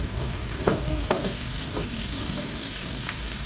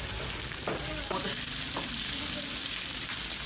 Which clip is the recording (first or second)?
second